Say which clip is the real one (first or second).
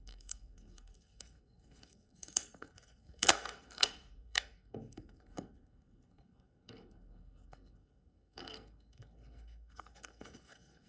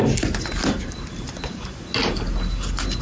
second